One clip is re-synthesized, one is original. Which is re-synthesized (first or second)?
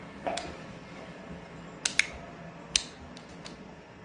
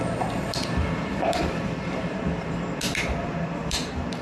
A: second